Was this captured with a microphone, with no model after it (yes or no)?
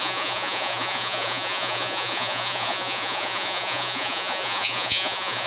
no